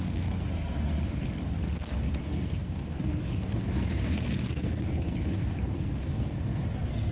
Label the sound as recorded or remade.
remade